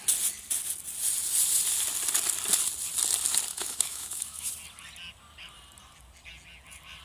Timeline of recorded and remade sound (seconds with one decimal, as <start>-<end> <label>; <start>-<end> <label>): 0.0-3.5 recorded; 3.5-4.5 remade; 4.5-7.0 recorded